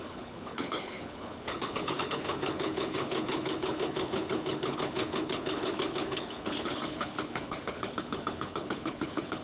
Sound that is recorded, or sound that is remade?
remade